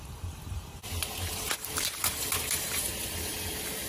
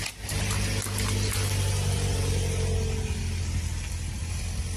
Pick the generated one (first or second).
first